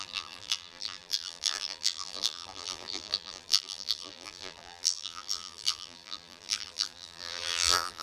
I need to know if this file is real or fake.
fake